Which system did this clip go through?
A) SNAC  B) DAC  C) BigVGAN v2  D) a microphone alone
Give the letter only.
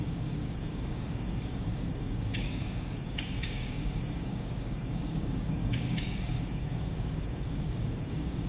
B